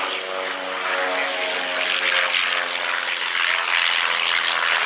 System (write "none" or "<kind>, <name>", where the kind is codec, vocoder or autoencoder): none